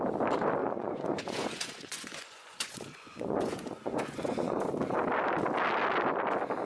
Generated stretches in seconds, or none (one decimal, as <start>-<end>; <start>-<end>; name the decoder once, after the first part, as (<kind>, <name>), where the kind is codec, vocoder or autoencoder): 0.6-4.6 (vocoder, Vocos)